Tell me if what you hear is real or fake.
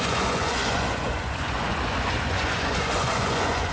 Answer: fake